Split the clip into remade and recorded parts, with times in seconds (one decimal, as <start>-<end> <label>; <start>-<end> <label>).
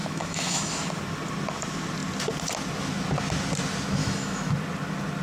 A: 0.0-0.7 remade; 0.7-4.0 recorded; 4.0-4.5 remade; 4.5-5.2 recorded